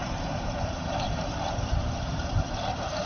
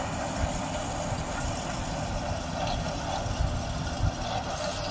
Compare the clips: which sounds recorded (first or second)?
second